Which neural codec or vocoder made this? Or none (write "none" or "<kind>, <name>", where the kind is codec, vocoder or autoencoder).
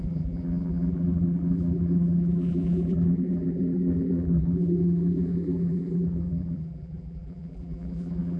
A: vocoder, BigVGAN v2